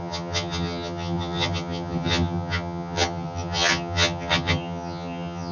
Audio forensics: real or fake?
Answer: fake